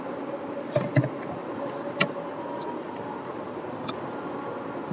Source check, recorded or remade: recorded